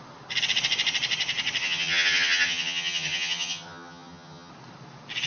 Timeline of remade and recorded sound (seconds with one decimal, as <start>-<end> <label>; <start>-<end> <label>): 0.0-1.6 recorded; 1.6-4.5 remade; 4.5-5.3 recorded